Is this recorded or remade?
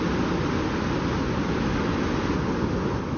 recorded